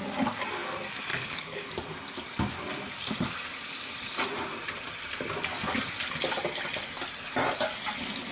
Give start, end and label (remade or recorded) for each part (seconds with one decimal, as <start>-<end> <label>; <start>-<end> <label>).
0.0-1.1 recorded; 1.1-1.7 remade; 1.7-8.3 recorded